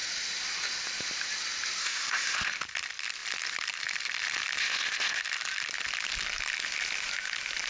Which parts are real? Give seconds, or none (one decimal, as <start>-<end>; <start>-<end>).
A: 0.0-1.8; 2.6-4.6; 5.2-7.7